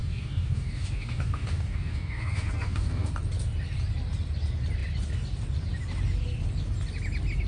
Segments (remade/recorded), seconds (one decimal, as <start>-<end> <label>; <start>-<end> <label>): 0.0-3.1 remade; 3.1-7.5 recorded